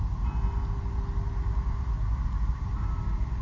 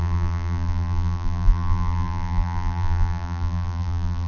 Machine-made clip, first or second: second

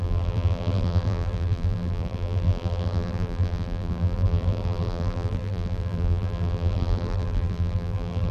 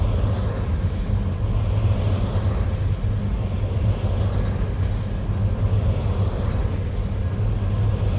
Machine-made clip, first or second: first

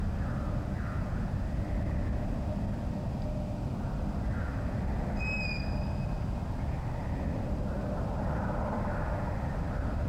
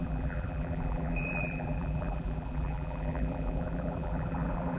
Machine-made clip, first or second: second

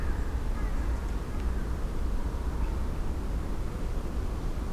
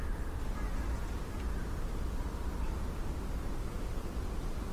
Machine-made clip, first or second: second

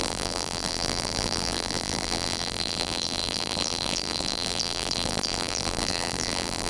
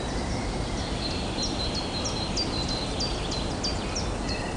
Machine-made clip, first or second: first